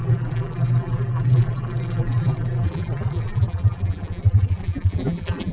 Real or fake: fake